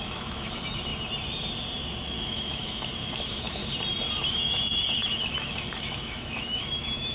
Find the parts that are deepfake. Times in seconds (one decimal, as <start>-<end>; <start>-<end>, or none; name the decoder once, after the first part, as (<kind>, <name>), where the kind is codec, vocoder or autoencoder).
0.0-0.9 (autoencoder, DAC-VAE); 2.0-3.6; 4.3-7.1